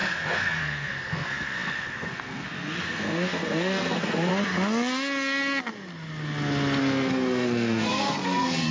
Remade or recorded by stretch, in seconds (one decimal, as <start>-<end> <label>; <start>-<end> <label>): 0.0-4.3 remade; 4.3-6.8 recorded; 6.8-8.7 remade